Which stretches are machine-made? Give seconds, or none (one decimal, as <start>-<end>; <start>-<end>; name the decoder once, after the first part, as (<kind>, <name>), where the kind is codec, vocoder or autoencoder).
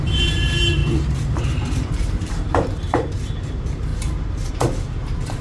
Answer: 0.0-3.9 (vocoder, BigVGAN v2); 4.5-5.4